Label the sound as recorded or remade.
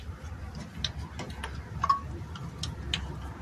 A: recorded